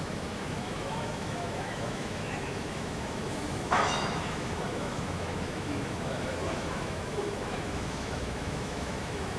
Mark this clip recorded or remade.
remade